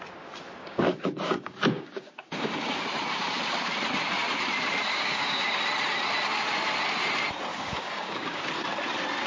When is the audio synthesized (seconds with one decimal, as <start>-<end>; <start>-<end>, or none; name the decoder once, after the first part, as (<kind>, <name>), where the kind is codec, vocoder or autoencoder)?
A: 0.6-2.8 (codec, DAC); 4.9-5.6; 7.5-8.5